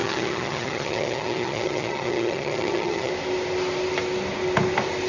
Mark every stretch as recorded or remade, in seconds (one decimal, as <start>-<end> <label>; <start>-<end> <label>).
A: 0.0-3.1 remade; 3.1-5.1 recorded